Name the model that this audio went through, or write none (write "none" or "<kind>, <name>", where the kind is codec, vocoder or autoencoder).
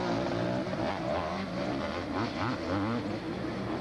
none